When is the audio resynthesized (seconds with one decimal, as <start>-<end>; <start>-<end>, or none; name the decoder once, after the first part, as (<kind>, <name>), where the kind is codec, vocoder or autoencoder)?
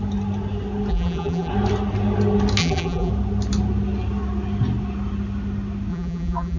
0.9-1.5 (vocoder, BigVGAN v2); 2.6-3.1; 5.9-6.6